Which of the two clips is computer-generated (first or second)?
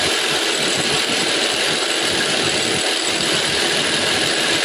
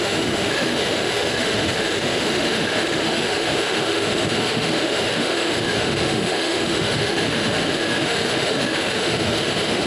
second